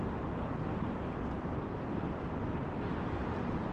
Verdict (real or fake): real